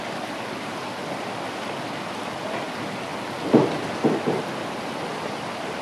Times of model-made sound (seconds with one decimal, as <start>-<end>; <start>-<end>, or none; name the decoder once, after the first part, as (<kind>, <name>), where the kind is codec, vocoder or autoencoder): none